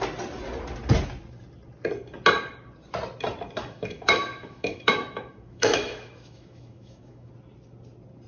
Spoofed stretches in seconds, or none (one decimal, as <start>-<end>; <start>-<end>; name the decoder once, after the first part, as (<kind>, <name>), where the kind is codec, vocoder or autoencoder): 3.6-7.3 (autoencoder, DAC-VAE)